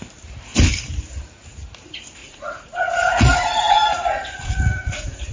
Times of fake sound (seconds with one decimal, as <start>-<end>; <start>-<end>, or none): 2.2-5.3